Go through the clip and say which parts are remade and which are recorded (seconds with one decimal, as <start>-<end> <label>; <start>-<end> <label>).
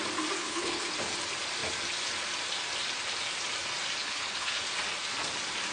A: 0.0-0.4 recorded; 0.4-0.9 remade; 0.9-4.0 recorded; 4.0-4.6 remade; 4.6-5.7 recorded